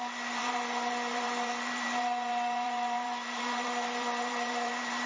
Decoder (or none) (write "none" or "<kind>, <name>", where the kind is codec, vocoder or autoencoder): vocoder, BigVGAN v2